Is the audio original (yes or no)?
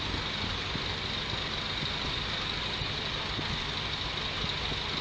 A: yes